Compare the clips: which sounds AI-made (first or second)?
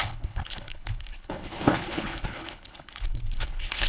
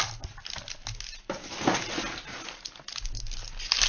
first